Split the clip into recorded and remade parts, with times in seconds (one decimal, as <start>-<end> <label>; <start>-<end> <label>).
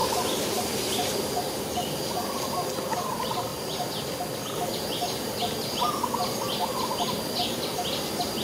0.0-8.4 recorded